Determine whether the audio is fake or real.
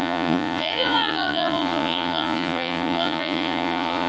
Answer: fake